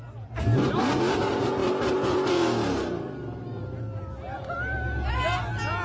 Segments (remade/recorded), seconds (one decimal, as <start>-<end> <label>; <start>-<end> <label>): 0.0-5.8 recorded